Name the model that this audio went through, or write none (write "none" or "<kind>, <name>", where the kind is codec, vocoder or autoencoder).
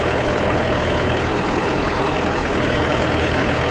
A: codec, HILCodec